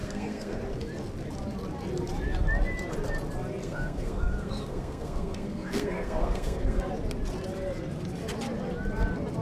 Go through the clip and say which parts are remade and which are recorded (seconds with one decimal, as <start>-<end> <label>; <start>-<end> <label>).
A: 0.0-0.6 remade; 0.6-3.6 recorded; 3.6-6.9 remade; 6.9-9.4 recorded